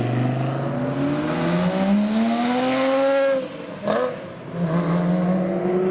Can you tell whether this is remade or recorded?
recorded